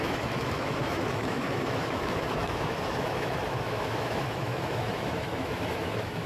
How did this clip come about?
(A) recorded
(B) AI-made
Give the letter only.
B